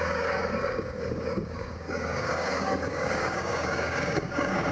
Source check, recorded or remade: remade